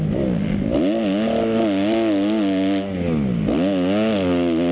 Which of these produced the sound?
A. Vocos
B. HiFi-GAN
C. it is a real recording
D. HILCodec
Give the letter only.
C